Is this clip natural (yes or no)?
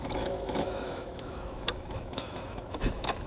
no